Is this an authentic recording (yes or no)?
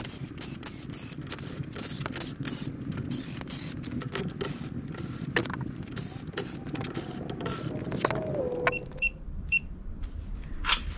yes